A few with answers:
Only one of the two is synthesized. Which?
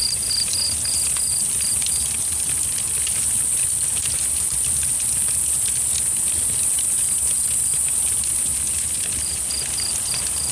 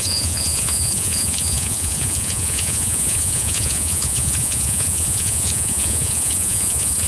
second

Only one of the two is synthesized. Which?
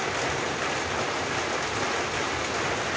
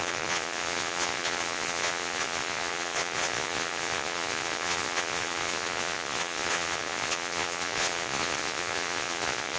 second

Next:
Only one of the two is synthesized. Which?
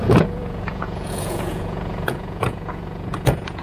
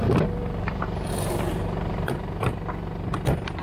first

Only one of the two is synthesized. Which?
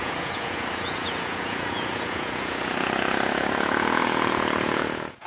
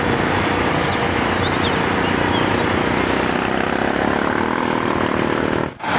first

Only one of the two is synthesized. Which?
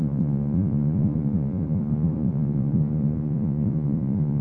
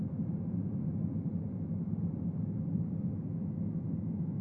first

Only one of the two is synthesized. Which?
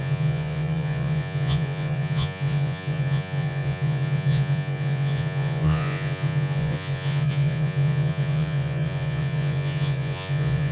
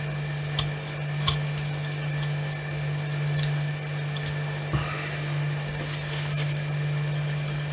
first